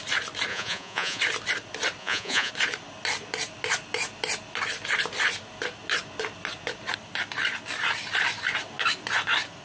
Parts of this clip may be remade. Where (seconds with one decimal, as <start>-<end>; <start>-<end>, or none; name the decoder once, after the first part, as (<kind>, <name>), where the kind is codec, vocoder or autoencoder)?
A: 0.5-1.2 (vocoder, Vocos); 2.0-2.5